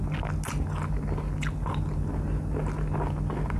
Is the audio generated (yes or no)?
no